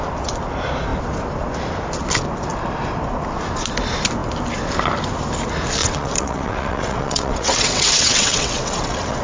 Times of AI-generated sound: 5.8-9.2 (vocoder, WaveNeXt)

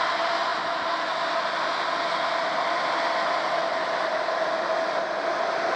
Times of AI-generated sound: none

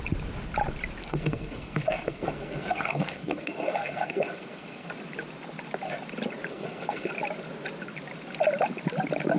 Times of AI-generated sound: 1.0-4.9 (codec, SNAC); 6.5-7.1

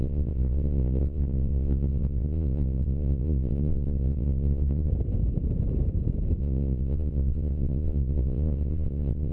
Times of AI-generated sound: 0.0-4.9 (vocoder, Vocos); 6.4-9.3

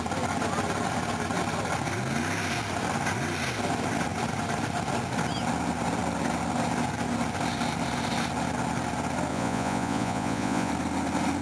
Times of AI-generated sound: 9.3-10.7 (vocoder, Vocos)